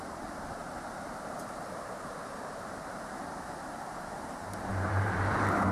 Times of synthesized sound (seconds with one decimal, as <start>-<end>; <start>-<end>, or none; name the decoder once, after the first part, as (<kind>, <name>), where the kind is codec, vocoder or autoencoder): 0.0-5.7 (vocoder, BigVGAN v2)